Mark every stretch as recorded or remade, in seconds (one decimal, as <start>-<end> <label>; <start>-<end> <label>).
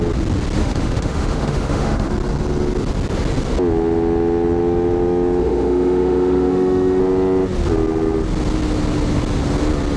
0.0-0.6 recorded; 0.6-2.1 remade; 2.1-5.4 recorded; 5.4-7.0 remade; 7.0-10.0 recorded